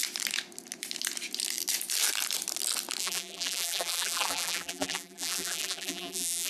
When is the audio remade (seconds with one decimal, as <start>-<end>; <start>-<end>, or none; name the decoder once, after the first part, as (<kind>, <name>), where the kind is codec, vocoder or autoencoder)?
3.0-6.5 (vocoder, BigVGAN v2)